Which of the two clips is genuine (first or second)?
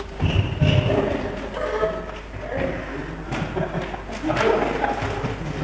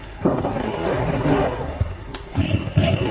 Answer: first